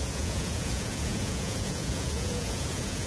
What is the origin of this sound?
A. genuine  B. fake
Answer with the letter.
B